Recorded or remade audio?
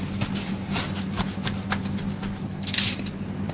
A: recorded